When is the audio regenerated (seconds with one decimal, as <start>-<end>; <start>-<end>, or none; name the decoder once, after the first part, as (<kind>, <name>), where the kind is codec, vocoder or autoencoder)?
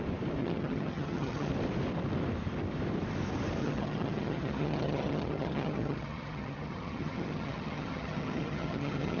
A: 0.4-1.5 (vocoder, HiFi-GAN); 3.6-9.2